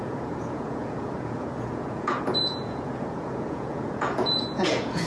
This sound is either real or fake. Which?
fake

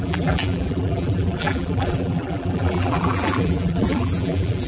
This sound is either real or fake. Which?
fake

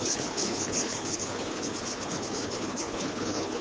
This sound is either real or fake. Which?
fake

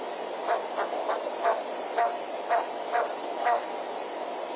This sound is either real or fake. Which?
real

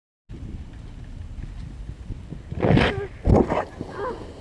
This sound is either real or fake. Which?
real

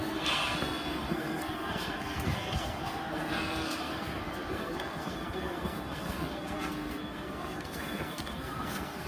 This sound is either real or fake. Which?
fake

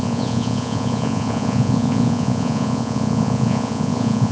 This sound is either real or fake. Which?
fake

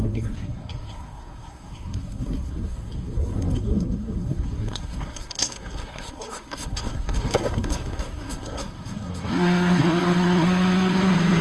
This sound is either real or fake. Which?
fake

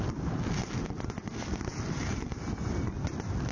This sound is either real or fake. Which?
real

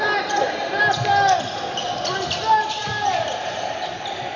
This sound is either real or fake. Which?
real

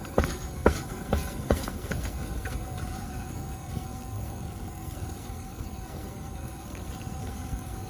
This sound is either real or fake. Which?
fake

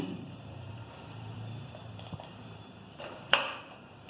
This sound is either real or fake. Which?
fake